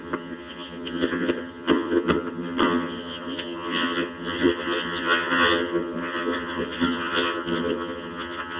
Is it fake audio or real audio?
fake